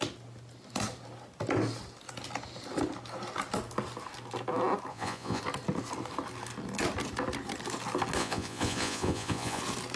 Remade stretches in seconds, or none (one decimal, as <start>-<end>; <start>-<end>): 4.9-5.4; 8.2-9.6